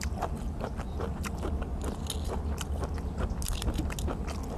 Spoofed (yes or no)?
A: no